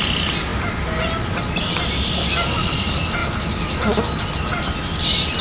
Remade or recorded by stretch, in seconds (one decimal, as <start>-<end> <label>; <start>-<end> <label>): 0.0-5.4 recorded